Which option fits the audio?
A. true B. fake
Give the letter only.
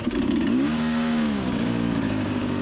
B